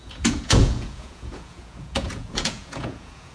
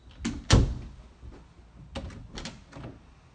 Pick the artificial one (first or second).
first